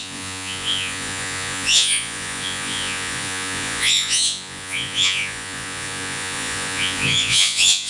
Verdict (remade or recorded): remade